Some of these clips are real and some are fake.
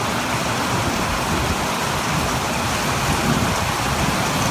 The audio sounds real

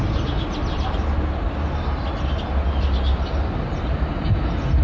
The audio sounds real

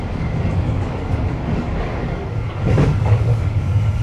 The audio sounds fake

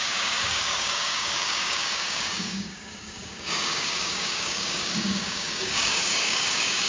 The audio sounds fake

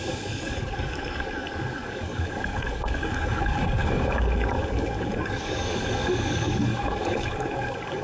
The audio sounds fake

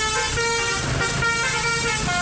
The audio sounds real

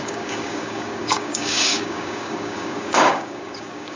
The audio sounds fake